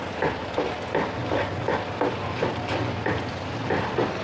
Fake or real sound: real